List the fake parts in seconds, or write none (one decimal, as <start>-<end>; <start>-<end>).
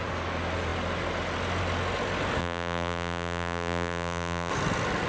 2.4-4.5